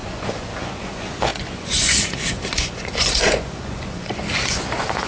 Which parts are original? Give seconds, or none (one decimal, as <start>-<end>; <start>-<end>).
none